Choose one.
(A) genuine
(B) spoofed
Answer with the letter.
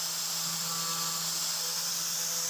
A